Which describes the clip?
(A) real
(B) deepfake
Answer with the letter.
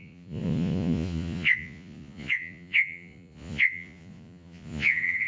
B